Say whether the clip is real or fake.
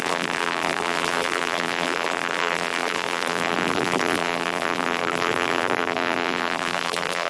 fake